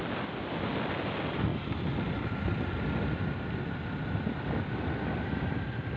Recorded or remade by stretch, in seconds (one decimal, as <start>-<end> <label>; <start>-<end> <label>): 0.0-6.0 recorded